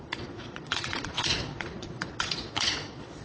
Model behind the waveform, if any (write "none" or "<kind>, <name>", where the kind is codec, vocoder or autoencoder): vocoder, Vocos